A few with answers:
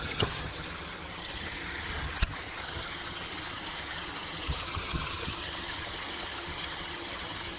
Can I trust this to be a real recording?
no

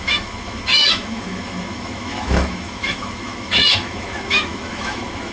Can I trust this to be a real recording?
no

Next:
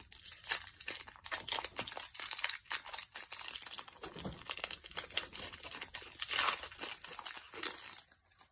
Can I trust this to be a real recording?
no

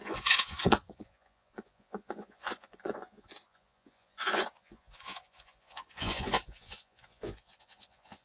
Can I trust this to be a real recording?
no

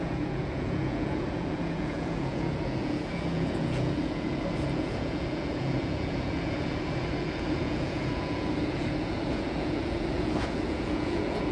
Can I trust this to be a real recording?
no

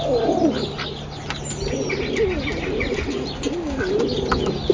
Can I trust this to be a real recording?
yes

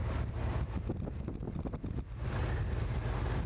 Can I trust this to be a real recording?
yes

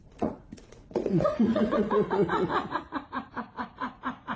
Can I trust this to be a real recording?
no